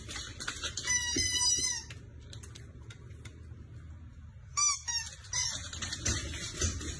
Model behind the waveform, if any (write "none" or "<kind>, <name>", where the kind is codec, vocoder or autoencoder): none